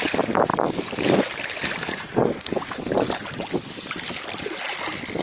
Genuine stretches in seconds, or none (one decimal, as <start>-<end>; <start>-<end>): 0.0-2.0; 2.6-5.2